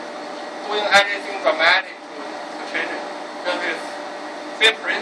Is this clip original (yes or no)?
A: yes